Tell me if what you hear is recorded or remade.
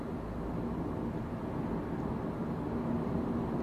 recorded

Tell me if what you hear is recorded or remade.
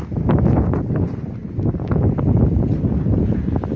recorded